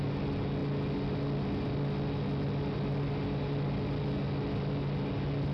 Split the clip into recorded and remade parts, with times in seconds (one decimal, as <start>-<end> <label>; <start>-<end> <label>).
0.0-5.5 recorded